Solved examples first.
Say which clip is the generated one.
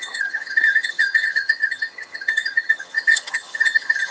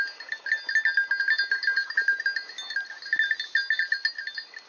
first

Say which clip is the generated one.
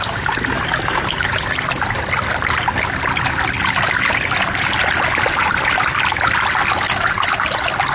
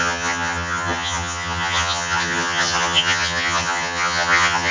second